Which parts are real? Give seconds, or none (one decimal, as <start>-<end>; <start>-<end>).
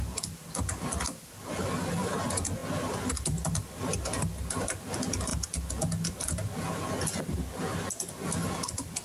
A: 0.0-9.0